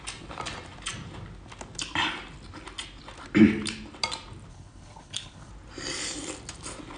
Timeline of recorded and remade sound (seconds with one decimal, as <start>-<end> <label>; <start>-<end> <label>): 0.0-4.5 recorded; 4.5-5.5 remade; 5.5-7.0 recorded